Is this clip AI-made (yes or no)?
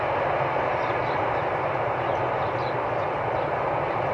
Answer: yes